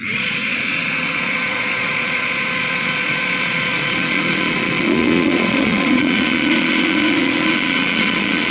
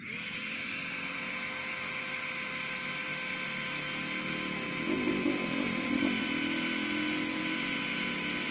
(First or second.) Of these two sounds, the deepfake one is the first